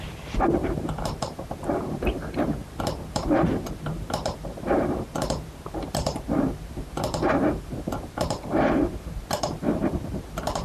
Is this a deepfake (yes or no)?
yes